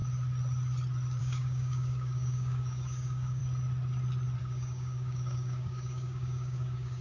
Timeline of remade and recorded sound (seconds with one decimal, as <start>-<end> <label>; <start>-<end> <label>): 0.0-1.2 recorded; 1.2-3.4 remade; 3.4-4.4 recorded; 4.4-7.0 remade